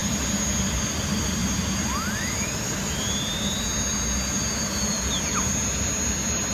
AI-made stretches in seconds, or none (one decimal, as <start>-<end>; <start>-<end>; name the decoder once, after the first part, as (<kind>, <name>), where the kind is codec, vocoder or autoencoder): none

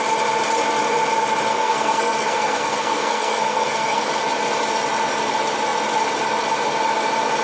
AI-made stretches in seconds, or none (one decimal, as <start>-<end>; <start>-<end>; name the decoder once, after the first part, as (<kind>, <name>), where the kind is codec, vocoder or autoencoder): 1.5-4.1 (codec, SNAC)

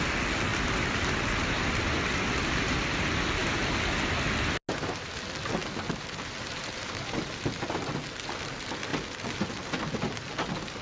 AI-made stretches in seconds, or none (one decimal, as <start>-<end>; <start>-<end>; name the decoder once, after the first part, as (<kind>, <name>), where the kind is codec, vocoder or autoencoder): 0.5-1.2 (vocoder, BigVGAN v2); 3.4-4.0; 5.6-8.0; 8.9-9.5